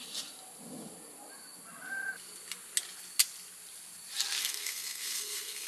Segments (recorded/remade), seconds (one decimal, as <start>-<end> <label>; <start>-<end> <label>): 0.0-4.4 recorded; 4.4-5.7 remade